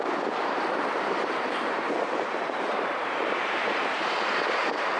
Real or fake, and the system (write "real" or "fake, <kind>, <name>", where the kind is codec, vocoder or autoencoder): fake, vocoder, BigVGAN v2